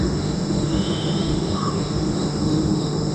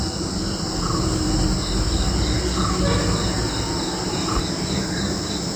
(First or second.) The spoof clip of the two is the first